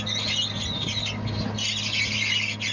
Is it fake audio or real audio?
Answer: real